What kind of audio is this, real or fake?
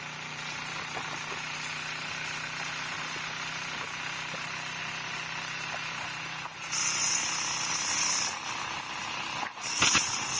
real